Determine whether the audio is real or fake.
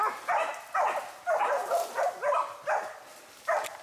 real